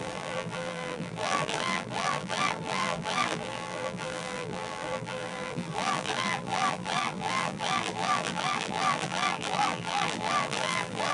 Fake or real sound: fake